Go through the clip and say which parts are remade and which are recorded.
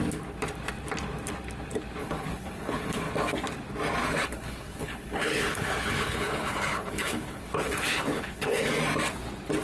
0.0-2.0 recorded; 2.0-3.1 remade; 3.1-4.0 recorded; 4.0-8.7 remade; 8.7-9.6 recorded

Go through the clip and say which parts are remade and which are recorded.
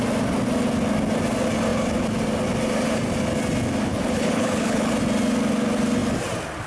0.0-3.9 recorded; 3.9-4.9 remade; 4.9-6.7 recorded